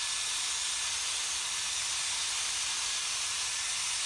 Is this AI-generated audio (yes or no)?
no